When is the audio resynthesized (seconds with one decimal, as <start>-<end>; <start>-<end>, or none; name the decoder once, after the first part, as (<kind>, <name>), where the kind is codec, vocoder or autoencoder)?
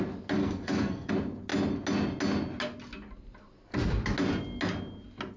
0.4-1.1 (codec, SNAC)